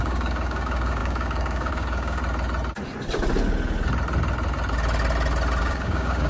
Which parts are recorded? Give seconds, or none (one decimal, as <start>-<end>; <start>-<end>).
2.2-5.6